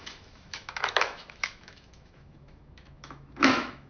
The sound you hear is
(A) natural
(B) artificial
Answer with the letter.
B